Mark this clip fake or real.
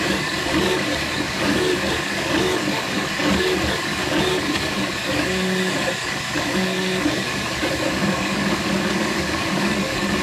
fake